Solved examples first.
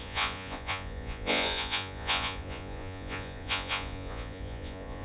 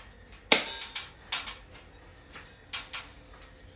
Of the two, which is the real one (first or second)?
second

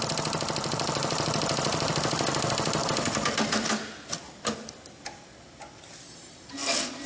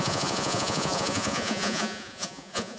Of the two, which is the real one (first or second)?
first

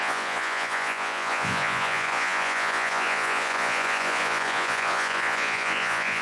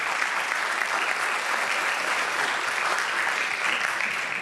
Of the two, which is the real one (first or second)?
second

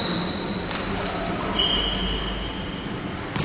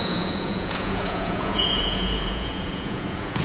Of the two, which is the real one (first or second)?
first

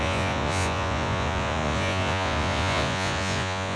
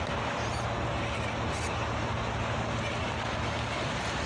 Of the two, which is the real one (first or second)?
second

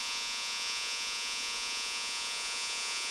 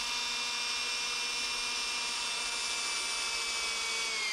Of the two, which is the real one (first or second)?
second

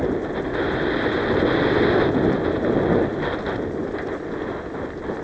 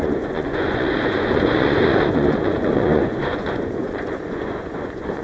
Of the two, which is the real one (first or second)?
first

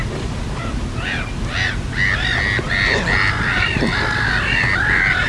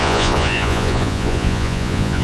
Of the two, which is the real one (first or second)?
first